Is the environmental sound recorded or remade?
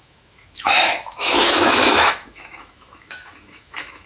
remade